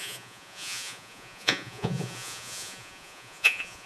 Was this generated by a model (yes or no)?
yes